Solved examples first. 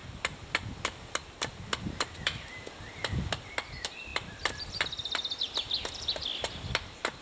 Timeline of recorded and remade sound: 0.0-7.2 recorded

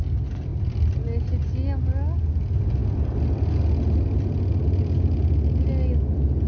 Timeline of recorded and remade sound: 0.0-6.5 recorded

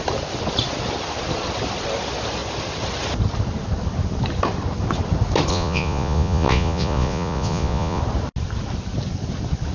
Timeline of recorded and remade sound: 0.0-5.5 recorded; 5.5-8.0 remade; 8.0-9.7 recorded

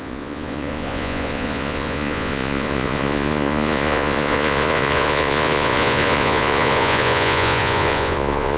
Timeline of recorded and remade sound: 0.0-8.6 remade

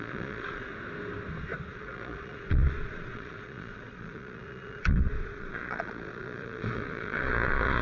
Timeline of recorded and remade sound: 0.0-0.7 remade; 0.7-1.7 recorded; 1.7-7.8 remade

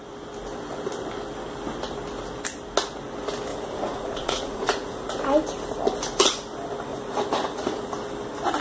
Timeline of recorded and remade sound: 0.0-3.5 recorded; 3.5-5.1 remade; 5.1-6.9 recorded; 6.9-7.9 remade; 7.9-8.6 recorded

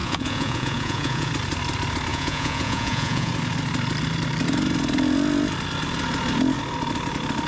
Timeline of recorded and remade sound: 0.0-1.3 remade; 1.3-2.1 recorded; 2.1-3.3 remade; 3.3-7.5 recorded